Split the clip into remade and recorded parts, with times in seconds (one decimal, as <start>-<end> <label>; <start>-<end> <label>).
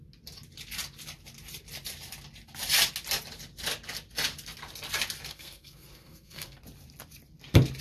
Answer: 0.0-5.3 recorded; 5.3-6.6 remade; 6.6-7.8 recorded